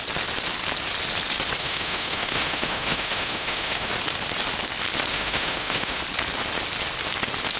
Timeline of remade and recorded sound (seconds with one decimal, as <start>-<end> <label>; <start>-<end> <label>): 0.0-1.6 recorded; 1.6-3.9 remade; 3.9-5.1 recorded; 5.1-6.0 remade; 6.0-7.6 recorded